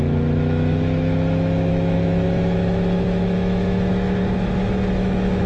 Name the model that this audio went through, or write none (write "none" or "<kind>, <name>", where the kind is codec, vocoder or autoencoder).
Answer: autoencoder, DAC-VAE